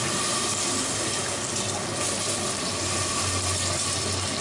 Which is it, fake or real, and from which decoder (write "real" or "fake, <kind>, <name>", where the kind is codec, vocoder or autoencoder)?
real